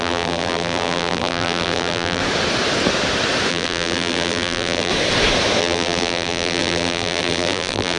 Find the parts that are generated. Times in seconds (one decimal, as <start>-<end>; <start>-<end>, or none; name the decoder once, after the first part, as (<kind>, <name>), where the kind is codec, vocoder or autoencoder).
0.0-2.2 (vocoder, BigVGAN v2); 3.5-4.9; 5.6-8.0